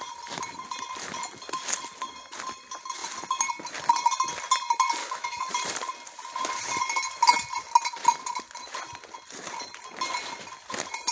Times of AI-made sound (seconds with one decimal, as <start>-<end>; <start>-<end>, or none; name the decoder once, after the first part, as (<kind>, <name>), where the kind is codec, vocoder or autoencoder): 5.0-5.5 (autoencoder, DAC-VAE)